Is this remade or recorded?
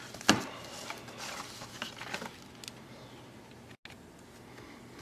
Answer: recorded